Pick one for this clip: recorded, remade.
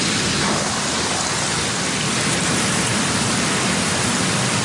recorded